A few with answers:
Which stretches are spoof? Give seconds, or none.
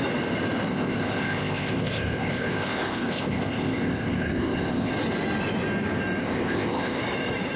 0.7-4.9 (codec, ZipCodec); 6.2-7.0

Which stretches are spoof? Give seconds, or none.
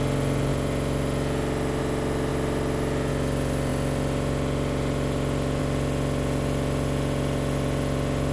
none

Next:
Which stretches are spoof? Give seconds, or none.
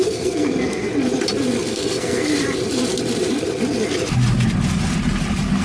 0.0-0.9 (codec, SNAC); 1.7-2.3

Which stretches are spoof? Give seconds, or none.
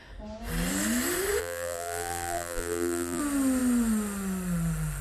1.4-3.2 (vocoder, BigVGAN v2)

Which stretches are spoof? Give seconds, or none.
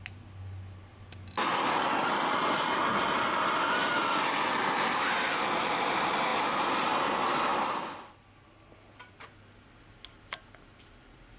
none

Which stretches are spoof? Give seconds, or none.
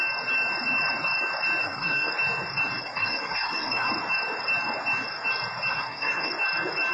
1.6-2.1 (codec, SNAC); 2.8-3.9; 5.7-6.3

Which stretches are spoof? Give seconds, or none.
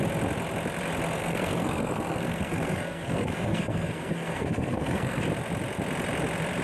1.2-5.2 (codec, SNAC)